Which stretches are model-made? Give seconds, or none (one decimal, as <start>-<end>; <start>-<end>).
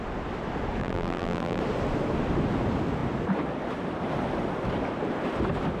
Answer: 0.8-1.6